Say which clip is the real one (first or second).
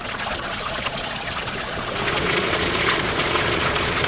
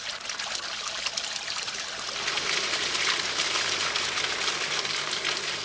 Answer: second